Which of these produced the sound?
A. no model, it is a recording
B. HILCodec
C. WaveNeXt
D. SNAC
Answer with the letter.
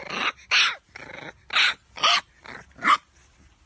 A